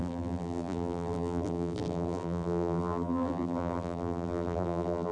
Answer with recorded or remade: remade